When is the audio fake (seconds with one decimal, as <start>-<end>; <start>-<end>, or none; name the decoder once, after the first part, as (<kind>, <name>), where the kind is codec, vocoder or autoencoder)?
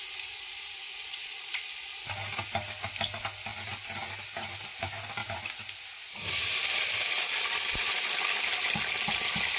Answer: 0.9-1.9 (vocoder, Vocos)